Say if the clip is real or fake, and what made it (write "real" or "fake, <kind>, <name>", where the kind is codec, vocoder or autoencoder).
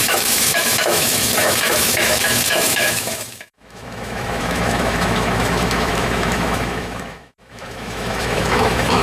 fake, autoencoder, DAC-VAE